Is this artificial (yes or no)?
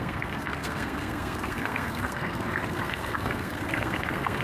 yes